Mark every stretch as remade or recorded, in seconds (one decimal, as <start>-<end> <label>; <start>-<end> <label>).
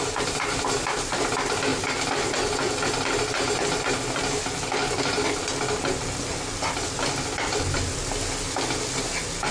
0.0-9.5 recorded